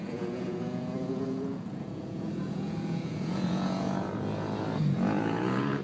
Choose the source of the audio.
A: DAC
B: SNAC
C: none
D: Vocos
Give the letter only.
D